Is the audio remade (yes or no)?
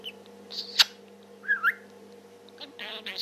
no